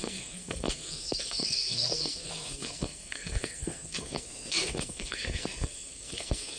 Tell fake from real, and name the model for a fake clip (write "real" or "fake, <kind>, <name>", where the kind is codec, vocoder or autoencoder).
fake, codec, SNAC